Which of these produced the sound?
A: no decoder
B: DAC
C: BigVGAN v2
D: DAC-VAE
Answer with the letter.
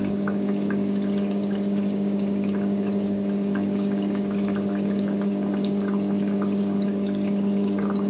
B